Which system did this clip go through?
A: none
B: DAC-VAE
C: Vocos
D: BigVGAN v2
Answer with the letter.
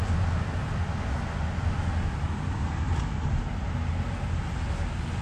A